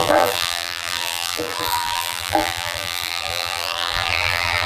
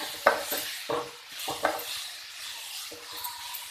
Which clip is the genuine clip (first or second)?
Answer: second